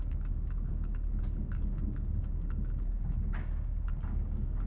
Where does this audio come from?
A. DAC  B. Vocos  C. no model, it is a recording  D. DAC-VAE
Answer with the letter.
A